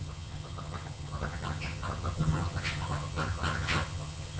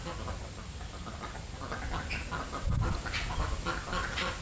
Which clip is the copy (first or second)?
first